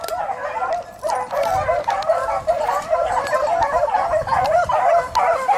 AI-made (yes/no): no